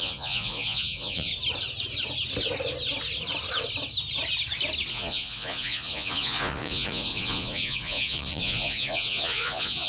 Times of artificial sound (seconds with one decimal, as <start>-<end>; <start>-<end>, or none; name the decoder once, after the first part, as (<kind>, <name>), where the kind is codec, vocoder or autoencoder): 0.0-1.3 (vocoder, Vocos); 4.9-9.9